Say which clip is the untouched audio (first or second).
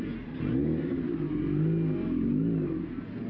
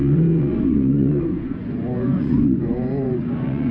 first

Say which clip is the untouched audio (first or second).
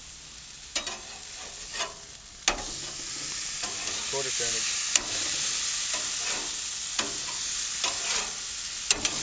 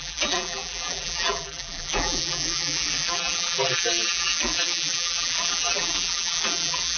first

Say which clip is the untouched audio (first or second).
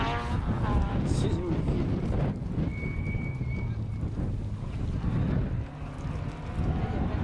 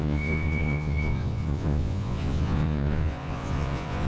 first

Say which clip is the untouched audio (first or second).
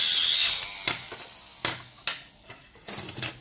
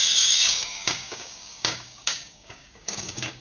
first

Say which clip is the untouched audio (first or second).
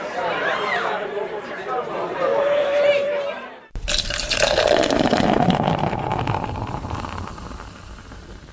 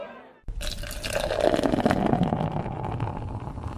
second